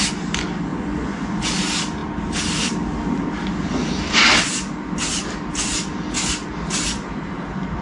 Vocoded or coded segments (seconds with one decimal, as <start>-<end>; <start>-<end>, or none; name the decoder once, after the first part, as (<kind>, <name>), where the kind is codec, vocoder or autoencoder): 0.7-1.5 (vocoder, Vocos)